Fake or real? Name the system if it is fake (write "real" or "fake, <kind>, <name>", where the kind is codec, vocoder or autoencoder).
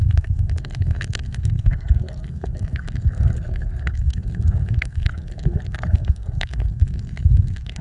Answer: fake, codec, SNAC